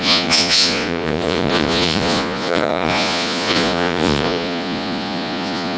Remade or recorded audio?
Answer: remade